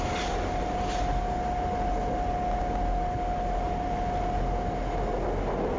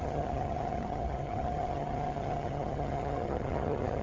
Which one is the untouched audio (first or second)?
first